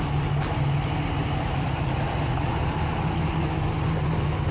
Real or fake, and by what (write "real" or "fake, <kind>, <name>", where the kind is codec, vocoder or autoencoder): real